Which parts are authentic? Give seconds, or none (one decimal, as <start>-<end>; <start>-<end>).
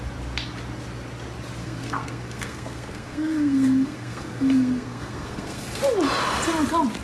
0.0-1.6; 5.8-7.0